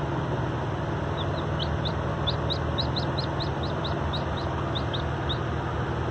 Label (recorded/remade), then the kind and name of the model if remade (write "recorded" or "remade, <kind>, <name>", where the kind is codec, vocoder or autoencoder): recorded